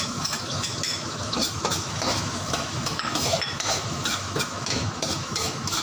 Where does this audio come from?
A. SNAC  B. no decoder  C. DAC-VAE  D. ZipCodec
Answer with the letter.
C